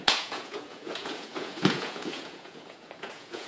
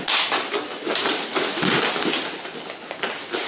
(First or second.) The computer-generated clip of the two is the first